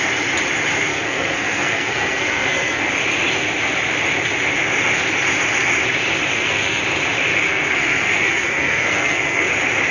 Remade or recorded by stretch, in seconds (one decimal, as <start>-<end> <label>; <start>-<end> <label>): 0.0-0.9 recorded; 0.9-2.9 remade; 2.9-6.3 recorded; 6.3-6.8 remade; 6.8-7.3 recorded; 7.3-9.5 remade; 9.5-9.9 recorded